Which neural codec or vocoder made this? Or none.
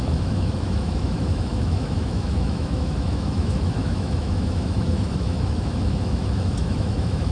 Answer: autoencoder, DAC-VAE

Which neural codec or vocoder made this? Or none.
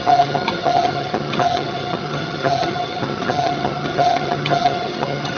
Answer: vocoder, HiFi-GAN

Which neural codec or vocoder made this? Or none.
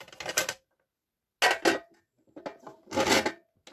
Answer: none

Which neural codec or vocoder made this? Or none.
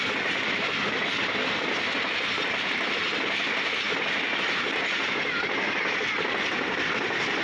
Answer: none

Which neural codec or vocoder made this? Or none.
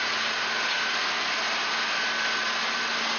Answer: none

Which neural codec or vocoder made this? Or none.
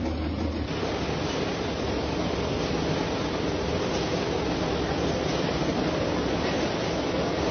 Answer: none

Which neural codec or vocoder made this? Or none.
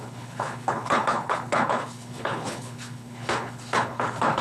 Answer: codec, HILCodec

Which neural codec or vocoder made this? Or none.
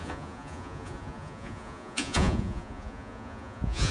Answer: vocoder, Vocos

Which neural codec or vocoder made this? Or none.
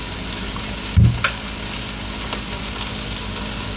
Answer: none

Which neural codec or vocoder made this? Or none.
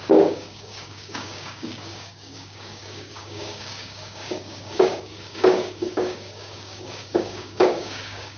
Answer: codec, DAC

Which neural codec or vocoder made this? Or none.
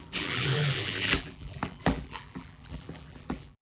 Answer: vocoder, BigVGAN v2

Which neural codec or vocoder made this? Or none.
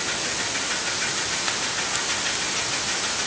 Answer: none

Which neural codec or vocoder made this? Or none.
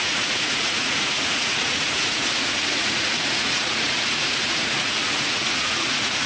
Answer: vocoder, Vocos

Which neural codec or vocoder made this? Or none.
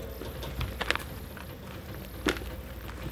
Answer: none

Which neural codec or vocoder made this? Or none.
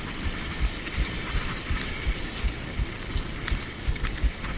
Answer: none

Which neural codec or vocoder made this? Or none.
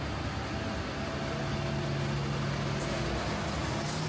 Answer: none